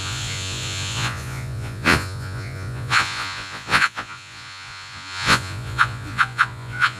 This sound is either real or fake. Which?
fake